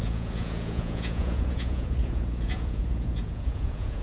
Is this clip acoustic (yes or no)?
no